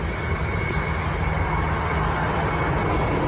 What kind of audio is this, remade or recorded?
recorded